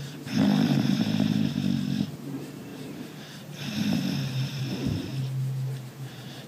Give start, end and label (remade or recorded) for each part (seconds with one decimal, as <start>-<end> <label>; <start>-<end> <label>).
0.0-5.1 remade; 5.1-5.9 recorded; 5.9-6.5 remade